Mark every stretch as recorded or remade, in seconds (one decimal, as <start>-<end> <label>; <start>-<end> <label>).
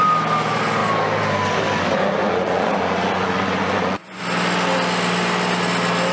0.0-2.2 recorded; 2.2-4.2 remade; 4.2-6.1 recorded